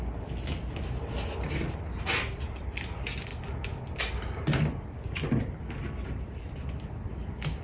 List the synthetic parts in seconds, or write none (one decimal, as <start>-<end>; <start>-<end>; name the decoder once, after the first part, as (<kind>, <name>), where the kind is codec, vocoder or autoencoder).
none